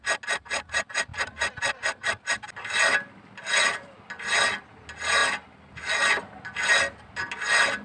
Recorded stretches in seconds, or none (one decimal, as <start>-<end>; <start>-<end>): 0.0-7.8